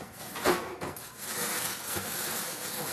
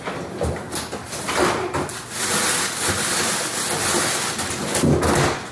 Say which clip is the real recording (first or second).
second